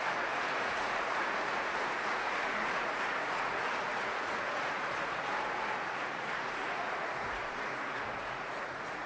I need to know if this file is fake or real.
fake